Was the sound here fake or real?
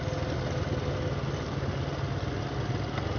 real